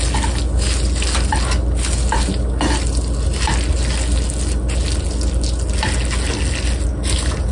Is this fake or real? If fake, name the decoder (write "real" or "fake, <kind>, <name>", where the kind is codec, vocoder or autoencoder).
real